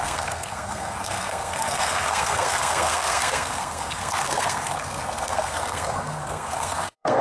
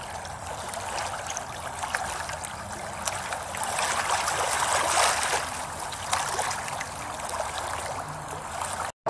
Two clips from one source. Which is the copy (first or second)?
first